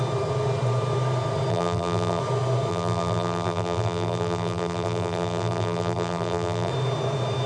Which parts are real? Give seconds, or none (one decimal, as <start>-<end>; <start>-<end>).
0.0-1.5; 2.2-2.7; 6.7-7.5